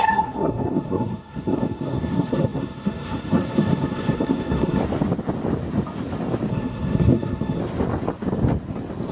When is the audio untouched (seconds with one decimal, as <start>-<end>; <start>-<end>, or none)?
4.8-6.5; 7.6-9.1